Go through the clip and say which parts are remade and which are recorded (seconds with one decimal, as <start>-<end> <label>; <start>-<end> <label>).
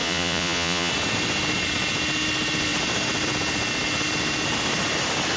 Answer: 0.0-0.9 remade; 0.9-5.4 recorded